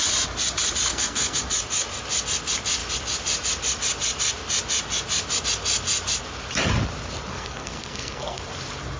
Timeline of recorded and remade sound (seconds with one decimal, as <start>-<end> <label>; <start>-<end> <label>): 0.0-0.9 recorded; 0.9-1.4 remade; 1.4-7.3 recorded; 7.3-8.4 remade; 8.4-9.0 recorded